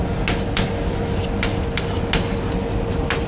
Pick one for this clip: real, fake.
real